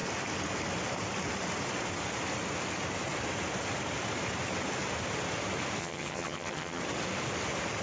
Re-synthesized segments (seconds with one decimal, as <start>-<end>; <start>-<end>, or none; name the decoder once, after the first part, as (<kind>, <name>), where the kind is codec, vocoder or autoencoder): 5.8-6.8 (vocoder, HiFi-GAN)